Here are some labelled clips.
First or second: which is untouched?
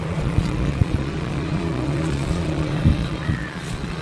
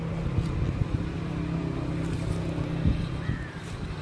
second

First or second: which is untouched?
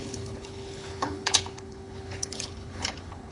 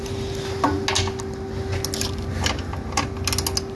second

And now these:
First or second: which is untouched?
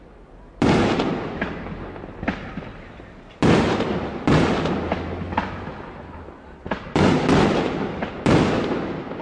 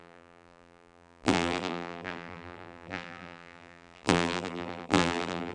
first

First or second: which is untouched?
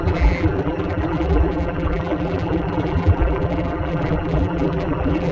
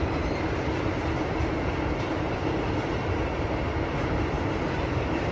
second